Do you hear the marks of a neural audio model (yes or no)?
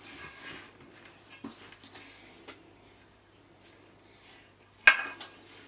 no